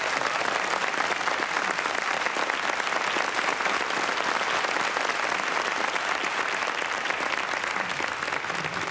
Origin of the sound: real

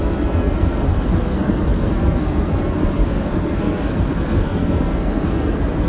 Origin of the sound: fake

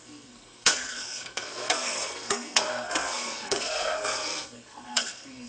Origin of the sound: fake